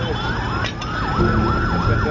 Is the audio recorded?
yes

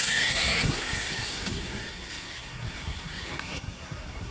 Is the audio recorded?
no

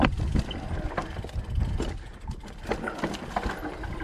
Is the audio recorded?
yes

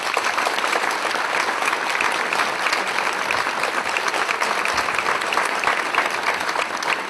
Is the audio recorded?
yes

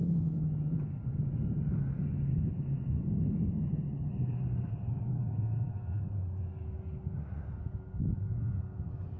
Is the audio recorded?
yes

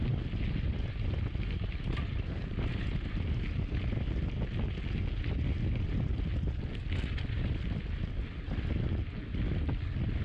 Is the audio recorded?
yes